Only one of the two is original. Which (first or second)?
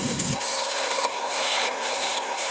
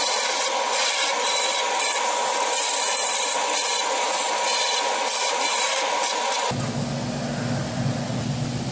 second